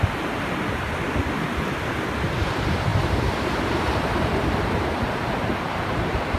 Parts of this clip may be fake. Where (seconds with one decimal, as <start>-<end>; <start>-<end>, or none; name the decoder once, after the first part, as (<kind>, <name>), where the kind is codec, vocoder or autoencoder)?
2.9-3.6 (vocoder, BigVGAN v2)